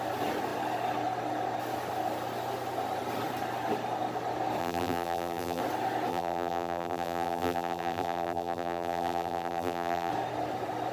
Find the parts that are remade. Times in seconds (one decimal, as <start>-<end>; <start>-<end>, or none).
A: 4.6-5.6; 6.1-10.1